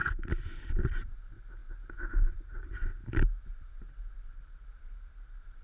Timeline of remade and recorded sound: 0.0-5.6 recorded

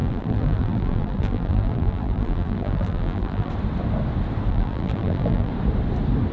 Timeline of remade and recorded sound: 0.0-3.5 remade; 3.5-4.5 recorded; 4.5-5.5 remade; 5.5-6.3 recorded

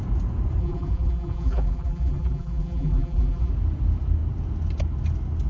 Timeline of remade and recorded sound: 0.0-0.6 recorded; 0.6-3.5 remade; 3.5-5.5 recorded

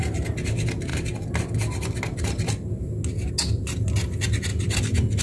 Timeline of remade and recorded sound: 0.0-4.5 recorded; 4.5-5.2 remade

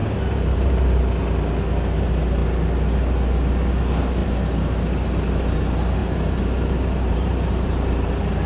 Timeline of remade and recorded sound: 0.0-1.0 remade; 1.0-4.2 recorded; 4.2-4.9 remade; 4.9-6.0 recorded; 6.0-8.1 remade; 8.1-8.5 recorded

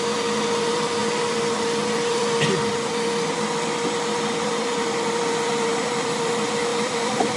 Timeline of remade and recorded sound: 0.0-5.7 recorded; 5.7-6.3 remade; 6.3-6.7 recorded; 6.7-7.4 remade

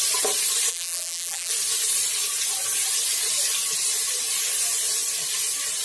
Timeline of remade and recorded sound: 0.0-0.7 recorded; 0.7-1.5 remade; 1.5-5.8 recorded

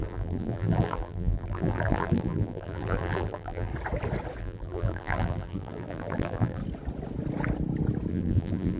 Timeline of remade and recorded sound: 0.0-3.7 remade; 3.7-4.4 recorded; 4.4-6.6 remade; 6.6-8.1 recorded; 8.1-8.8 remade